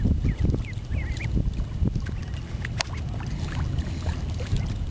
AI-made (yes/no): no